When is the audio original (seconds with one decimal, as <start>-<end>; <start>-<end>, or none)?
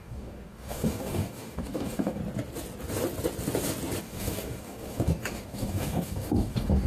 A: 2.2-4.0